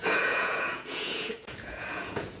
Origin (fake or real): fake